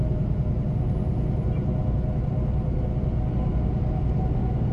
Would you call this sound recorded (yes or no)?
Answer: yes